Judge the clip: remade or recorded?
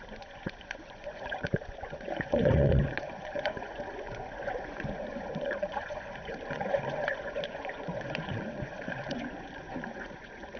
remade